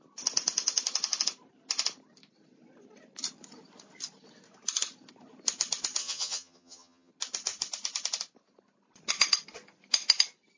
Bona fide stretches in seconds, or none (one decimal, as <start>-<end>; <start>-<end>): 0.0-6.0; 7.1-10.6